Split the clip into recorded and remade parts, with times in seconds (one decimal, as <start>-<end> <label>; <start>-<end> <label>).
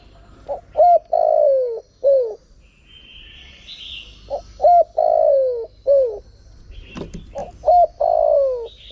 0.0-8.9 recorded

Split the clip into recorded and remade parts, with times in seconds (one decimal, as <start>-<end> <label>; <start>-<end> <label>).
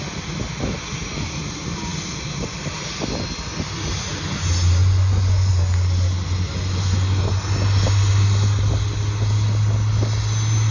0.0-4.8 recorded; 4.8-5.5 remade; 5.5-10.7 recorded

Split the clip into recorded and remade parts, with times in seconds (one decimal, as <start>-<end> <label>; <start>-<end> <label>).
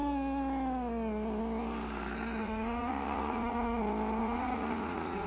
0.0-2.4 recorded; 2.4-3.8 remade; 3.8-4.2 recorded; 4.2-5.3 remade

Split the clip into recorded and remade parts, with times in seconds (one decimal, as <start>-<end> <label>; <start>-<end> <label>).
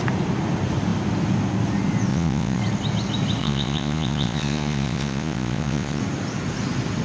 0.0-2.1 recorded; 2.1-2.6 remade; 2.6-3.4 recorded; 3.4-6.0 remade; 6.0-7.0 recorded